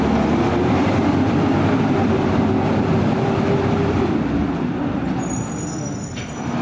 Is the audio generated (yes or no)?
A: yes